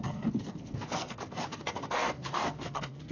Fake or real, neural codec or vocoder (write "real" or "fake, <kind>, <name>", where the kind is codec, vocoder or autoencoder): fake, codec, SNAC